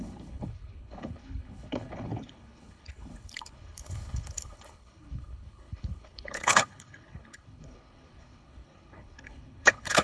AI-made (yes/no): yes